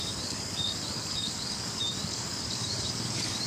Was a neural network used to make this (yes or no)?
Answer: yes